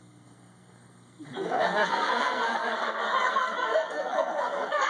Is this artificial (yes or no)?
yes